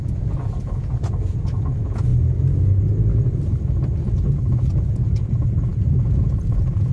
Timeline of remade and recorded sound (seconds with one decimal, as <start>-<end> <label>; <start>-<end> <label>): 0.0-2.1 remade; 2.1-4.0 recorded; 4.0-6.9 remade